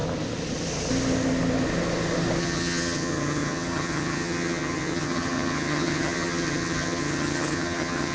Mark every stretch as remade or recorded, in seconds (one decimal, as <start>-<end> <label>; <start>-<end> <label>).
0.0-2.4 recorded; 2.4-8.1 remade